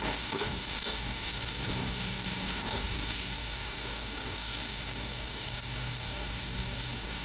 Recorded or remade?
remade